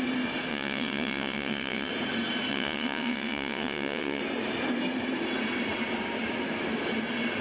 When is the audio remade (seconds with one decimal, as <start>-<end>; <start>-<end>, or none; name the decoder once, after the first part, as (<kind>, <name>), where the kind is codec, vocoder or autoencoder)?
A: 0.5-1.9 (vocoder, WaveNeXt); 2.5-4.2